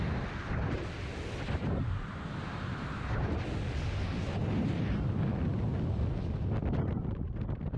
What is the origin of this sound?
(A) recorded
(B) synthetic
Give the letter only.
A